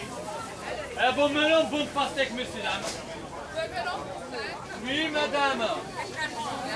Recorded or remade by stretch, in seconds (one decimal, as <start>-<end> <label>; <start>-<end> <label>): 0.0-6.8 recorded